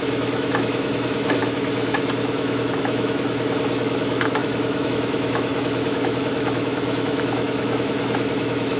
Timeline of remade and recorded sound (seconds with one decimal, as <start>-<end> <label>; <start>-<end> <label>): 0.0-8.8 remade

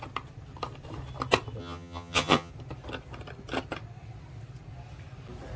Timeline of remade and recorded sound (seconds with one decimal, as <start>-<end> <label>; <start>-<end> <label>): 0.0-1.6 recorded; 1.6-2.5 remade; 2.5-5.6 recorded

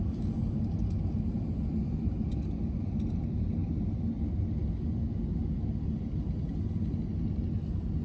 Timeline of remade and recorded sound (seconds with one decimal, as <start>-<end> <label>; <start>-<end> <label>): 0.0-8.0 recorded

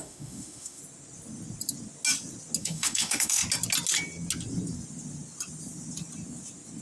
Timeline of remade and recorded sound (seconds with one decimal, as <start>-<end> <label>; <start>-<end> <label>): 0.0-0.8 remade; 0.8-2.6 recorded; 2.6-3.4 remade; 3.4-6.8 recorded

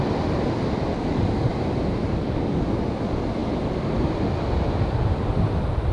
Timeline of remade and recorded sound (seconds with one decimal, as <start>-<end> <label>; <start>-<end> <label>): 0.0-0.9 recorded; 0.9-1.5 remade; 1.5-2.0 recorded; 2.0-2.5 remade; 2.5-5.9 recorded